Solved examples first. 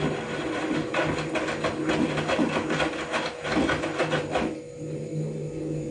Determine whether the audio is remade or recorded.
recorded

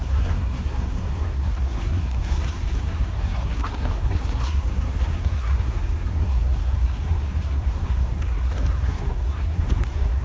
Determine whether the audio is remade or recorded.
remade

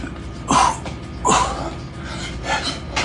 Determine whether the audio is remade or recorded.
recorded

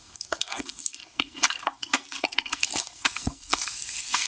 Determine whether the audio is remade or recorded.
remade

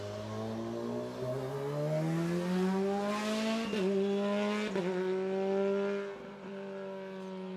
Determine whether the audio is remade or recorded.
recorded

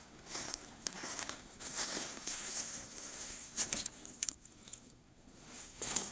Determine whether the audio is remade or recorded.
remade